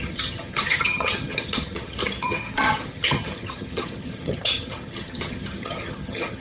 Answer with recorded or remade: remade